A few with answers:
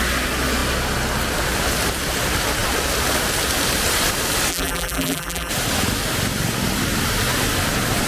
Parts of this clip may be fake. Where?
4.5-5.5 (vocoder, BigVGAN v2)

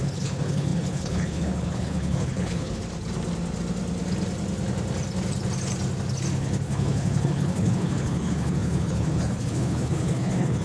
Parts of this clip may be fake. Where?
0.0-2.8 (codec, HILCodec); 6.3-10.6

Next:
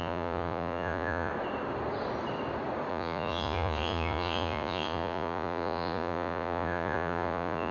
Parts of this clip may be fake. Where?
0.0-1.3 (vocoder, Vocos); 2.9-7.7

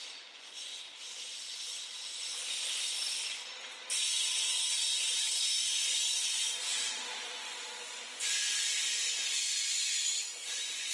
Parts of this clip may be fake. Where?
0.0-3.4 (vocoder, Vocos); 4.0-10.9

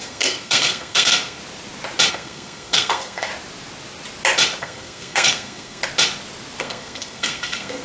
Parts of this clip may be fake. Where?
0.0-1.4 (codec, SNAC); 2.1-3.3; 4.6-5.8; 6.6-7.8

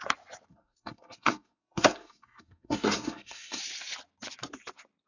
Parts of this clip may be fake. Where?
0.5-3.6 (codec, SNAC)

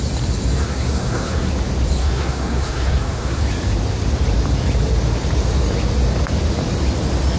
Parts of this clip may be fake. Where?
0.6-1.5 (codec, SNAC); 2.0-3.4

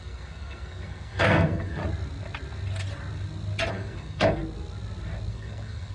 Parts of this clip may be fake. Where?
0.0-1.8 (codec, SNAC); 3.7-4.4; 5.3-5.9